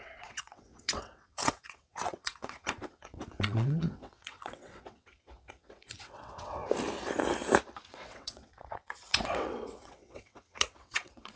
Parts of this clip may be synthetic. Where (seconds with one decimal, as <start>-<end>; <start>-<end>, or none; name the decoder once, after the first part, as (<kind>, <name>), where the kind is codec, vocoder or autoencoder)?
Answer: 0.0-6.6 (vocoder, WaveNeXt); 7.9-11.4